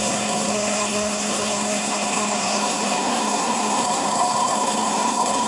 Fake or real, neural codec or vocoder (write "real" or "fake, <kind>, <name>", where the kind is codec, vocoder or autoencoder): fake, codec, SNAC